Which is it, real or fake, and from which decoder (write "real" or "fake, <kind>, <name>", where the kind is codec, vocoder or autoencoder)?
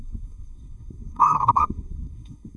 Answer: fake, codec, SNAC